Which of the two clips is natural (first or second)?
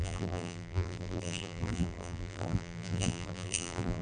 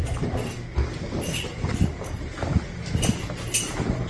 second